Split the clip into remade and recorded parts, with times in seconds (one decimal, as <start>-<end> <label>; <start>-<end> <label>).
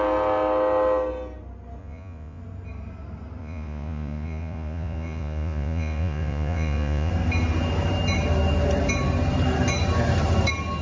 0.0-1.8 recorded; 1.8-2.4 remade; 2.4-3.4 recorded; 3.4-7.1 remade; 7.1-10.8 recorded